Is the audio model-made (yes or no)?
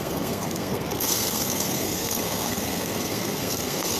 yes